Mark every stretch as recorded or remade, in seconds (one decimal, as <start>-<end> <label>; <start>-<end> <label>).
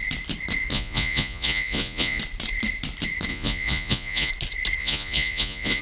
0.0-0.7 recorded; 0.7-2.2 remade; 2.2-3.3 recorded; 3.3-4.3 remade; 4.3-4.8 recorded; 4.8-5.8 remade